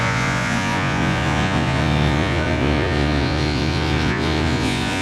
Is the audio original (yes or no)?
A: no